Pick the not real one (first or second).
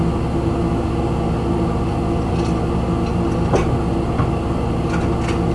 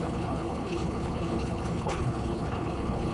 second